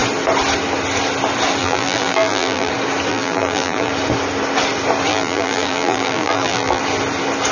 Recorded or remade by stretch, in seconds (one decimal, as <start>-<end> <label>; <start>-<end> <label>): 0.0-1.6 recorded; 1.6-2.7 remade; 2.7-3.1 recorded; 3.1-3.9 remade; 3.9-5.1 recorded; 5.1-6.8 remade; 6.8-7.5 recorded